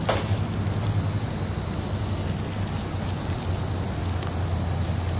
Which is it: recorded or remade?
recorded